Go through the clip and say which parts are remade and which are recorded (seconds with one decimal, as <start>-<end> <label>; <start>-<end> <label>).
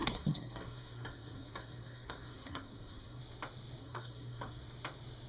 0.0-3.2 remade; 3.2-3.8 recorded; 3.8-4.6 remade; 4.6-5.3 recorded